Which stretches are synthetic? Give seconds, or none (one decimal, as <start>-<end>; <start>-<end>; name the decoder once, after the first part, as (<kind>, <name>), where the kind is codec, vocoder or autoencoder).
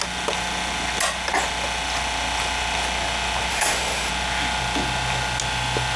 3.5-4.1 (autoencoder, DAC-VAE)